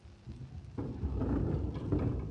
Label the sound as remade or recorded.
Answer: recorded